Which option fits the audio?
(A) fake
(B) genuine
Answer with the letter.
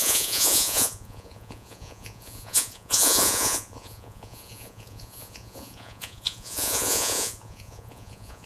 A